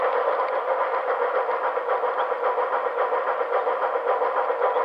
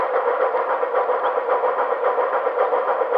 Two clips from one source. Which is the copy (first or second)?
second